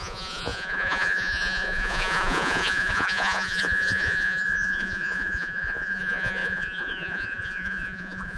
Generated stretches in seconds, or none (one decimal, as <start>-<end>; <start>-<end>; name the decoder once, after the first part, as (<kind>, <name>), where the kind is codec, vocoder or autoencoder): 0.0-8.4 (vocoder, Vocos)